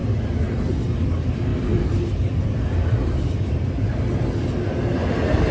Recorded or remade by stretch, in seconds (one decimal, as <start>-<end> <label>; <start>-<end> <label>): 0.0-0.5 remade; 0.5-1.5 recorded; 1.5-4.3 remade; 4.3-5.5 recorded